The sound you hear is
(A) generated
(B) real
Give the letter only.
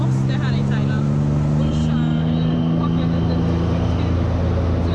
B